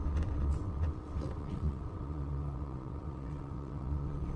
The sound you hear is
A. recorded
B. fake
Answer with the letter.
B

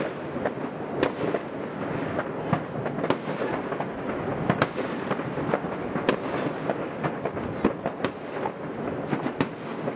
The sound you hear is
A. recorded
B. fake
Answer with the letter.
A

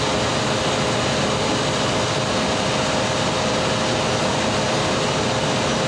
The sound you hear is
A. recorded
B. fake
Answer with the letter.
A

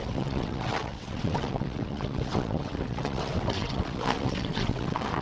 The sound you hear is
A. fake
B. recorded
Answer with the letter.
A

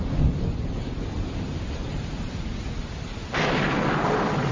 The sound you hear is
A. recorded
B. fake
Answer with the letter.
A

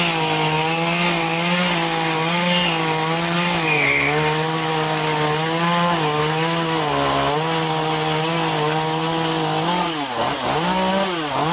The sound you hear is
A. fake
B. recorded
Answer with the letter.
B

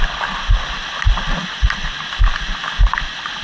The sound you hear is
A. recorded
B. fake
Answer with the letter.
A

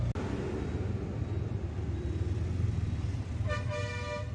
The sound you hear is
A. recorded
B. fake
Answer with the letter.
A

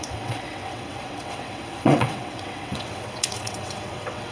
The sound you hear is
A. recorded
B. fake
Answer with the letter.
B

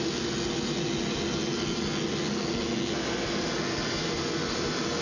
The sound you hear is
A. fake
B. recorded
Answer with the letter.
B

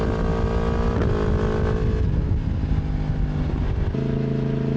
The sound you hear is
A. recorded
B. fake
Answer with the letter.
A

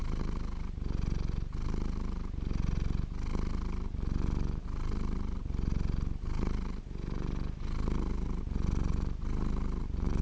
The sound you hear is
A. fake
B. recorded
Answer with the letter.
B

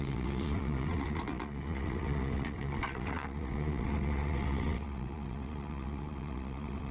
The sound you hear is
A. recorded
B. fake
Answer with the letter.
B